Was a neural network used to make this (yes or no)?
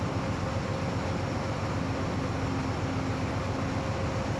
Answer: no